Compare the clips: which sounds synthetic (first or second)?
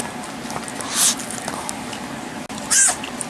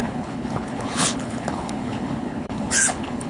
second